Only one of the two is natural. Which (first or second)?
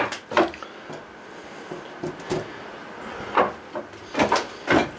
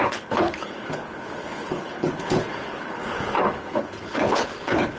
first